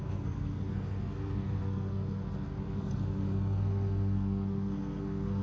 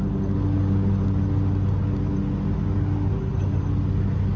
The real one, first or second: second